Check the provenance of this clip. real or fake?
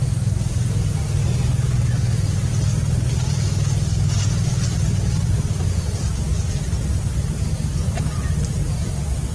real